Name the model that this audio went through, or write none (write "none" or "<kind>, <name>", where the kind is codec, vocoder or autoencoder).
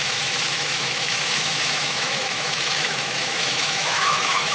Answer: autoencoder, DAC-VAE